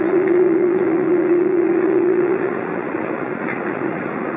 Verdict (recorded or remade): remade